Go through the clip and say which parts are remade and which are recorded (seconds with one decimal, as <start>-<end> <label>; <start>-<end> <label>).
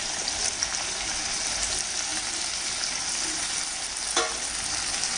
0.0-5.2 recorded